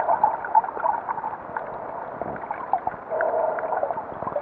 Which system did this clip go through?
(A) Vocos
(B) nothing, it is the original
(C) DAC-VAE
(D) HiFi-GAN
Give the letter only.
B